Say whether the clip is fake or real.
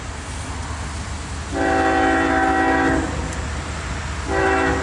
real